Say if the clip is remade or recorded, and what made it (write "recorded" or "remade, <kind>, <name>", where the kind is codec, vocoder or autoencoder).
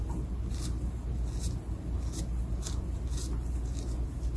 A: recorded